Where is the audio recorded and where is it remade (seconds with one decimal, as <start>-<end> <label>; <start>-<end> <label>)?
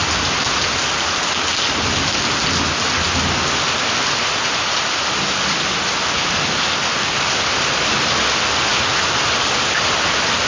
0.0-10.5 recorded